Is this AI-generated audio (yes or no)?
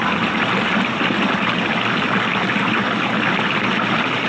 no